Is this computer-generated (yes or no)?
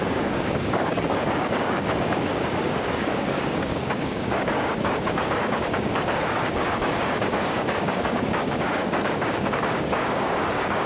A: yes